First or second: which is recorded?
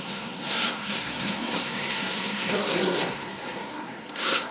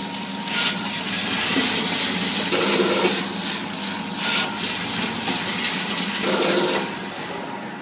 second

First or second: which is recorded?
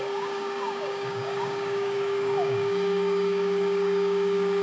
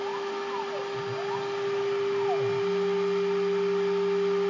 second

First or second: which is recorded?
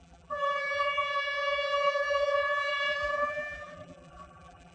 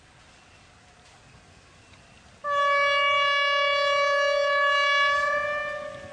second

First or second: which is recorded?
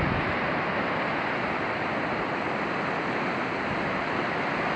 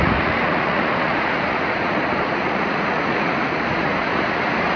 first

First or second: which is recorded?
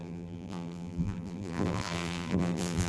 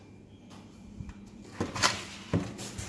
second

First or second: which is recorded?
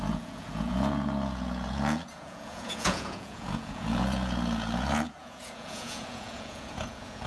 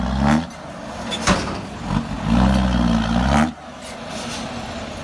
second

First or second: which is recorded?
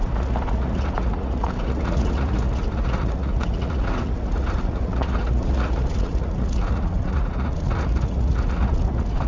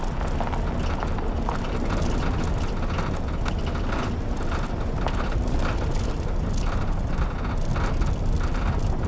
second